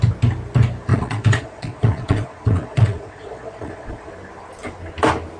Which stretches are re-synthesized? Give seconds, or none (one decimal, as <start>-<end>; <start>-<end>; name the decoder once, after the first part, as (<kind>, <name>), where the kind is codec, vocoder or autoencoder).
0.9-4.1 (vocoder, Vocos)